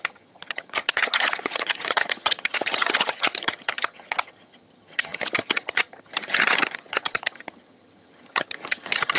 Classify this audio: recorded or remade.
remade